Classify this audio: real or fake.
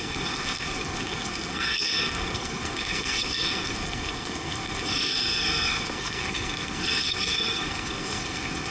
fake